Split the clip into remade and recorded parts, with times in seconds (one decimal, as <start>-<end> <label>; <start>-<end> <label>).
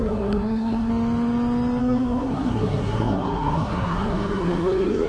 0.0-0.9 remade; 0.9-1.8 recorded; 1.8-5.1 remade